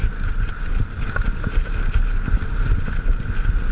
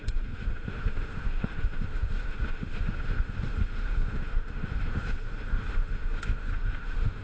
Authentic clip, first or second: first